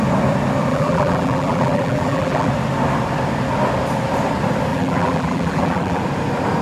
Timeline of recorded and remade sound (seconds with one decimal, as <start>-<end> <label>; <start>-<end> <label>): 0.0-0.7 recorded; 0.7-2.5 remade; 2.5-4.7 recorded; 4.7-6.0 remade; 6.0-6.6 recorded